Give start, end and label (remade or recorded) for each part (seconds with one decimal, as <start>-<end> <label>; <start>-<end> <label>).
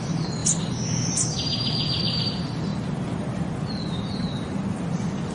0.0-5.3 recorded